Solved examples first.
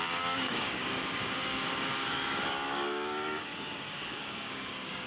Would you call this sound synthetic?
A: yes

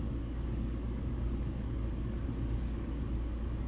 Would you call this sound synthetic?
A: yes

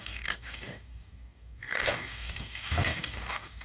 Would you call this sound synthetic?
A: yes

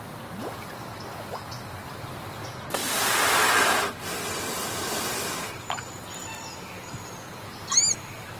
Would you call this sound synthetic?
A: no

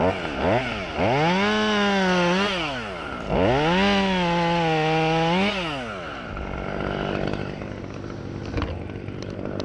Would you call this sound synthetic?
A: no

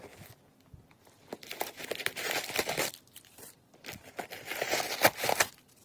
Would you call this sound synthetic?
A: no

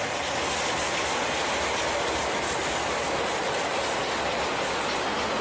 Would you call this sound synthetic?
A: no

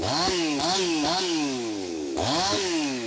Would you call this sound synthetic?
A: yes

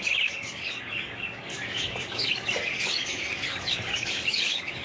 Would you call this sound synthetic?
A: yes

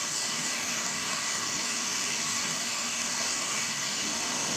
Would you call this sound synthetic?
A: yes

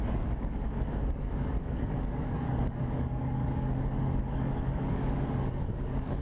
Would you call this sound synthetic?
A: yes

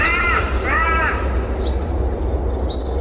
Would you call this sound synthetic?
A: no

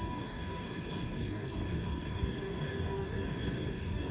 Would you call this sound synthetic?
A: yes